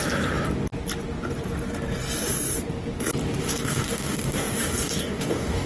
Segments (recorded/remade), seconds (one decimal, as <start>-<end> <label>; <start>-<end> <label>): 0.0-3.4 recorded; 3.4-5.7 remade